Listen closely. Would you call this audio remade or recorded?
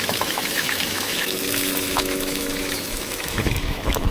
remade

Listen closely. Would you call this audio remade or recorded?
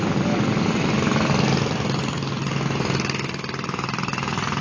recorded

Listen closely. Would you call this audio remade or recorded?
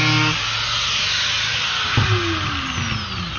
recorded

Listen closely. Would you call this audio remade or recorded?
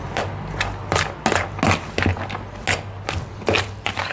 recorded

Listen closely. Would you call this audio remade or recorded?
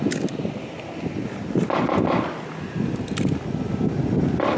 recorded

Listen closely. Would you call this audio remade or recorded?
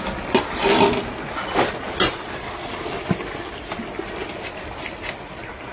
recorded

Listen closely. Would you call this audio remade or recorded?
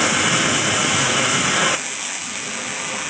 recorded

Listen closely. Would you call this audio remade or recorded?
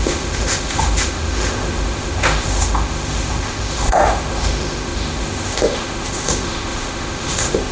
remade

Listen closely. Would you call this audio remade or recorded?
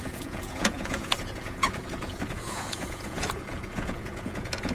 remade